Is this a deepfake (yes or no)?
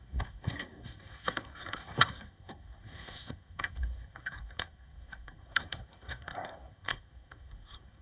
yes